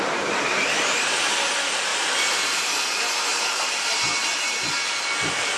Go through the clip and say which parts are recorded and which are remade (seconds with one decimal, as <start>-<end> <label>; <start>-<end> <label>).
0.0-1.9 recorded; 1.9-2.6 remade; 2.6-3.3 recorded; 3.3-3.9 remade; 3.9-5.6 recorded

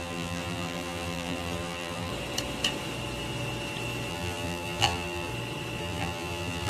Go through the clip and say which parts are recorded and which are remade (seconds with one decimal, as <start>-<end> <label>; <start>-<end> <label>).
0.0-2.1 remade; 2.1-4.1 recorded; 4.1-5.3 remade; 5.3-5.8 recorded; 5.8-6.7 remade

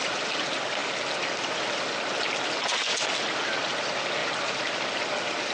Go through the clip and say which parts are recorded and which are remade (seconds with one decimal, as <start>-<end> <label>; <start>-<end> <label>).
0.0-5.5 recorded

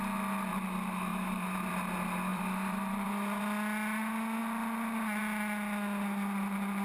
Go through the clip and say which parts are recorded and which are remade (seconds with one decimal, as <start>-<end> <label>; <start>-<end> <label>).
0.0-1.1 recorded; 1.1-1.7 remade; 1.7-2.3 recorded; 2.3-3.4 remade; 3.4-6.8 recorded

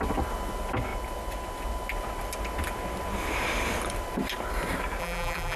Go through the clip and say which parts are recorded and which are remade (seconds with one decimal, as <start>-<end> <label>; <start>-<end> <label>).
0.0-5.0 recorded; 5.0-5.6 remade

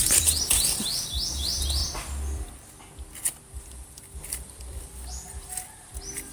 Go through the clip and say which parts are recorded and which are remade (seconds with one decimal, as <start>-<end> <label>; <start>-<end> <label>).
0.0-1.8 remade; 1.8-3.5 recorded; 3.5-6.3 remade

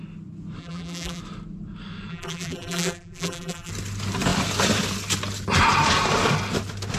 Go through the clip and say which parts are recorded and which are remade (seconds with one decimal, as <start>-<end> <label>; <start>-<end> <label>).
0.0-0.6 recorded; 0.6-1.2 remade; 1.2-2.1 recorded; 2.1-3.7 remade; 3.7-7.0 recorded